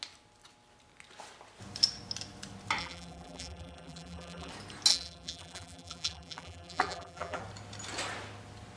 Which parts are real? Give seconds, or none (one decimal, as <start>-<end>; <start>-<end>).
0.0-2.8; 4.5-4.9; 7.4-8.8